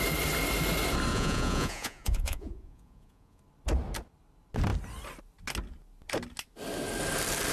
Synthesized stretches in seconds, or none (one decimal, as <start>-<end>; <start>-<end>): 1.1-3.4